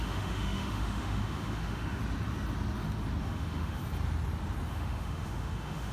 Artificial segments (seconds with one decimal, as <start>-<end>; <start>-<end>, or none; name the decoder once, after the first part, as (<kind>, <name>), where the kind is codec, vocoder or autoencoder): 0.0-2.0 (autoencoder, DAC-VAE); 3.2-3.8; 4.7-5.9

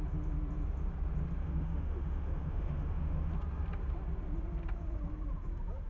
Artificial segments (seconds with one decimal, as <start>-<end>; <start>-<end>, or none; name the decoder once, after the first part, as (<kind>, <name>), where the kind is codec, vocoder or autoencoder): 1.4-3.3 (autoencoder, DAC-VAE)

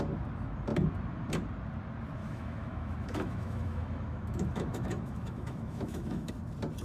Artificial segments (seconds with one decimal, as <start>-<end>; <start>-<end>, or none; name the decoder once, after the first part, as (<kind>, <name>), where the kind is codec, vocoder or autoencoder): 2.2-6.3 (autoencoder, DAC-VAE)

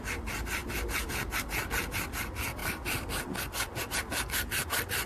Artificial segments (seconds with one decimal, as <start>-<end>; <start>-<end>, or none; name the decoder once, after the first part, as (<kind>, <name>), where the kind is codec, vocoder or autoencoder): none

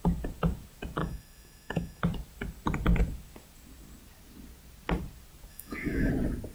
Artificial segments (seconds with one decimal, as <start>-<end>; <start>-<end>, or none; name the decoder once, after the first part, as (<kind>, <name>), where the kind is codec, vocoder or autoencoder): 1.0-2.0 (autoencoder, DAC-VAE); 5.5-6.1

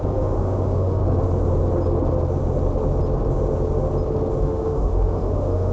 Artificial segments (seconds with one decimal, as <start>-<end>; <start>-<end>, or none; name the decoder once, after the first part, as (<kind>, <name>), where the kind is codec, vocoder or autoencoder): 0.0-1.0 (autoencoder, DAC-VAE); 4.4-5.7